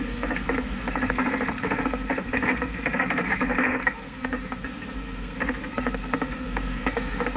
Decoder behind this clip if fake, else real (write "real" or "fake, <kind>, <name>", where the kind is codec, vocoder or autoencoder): fake, codec, SNAC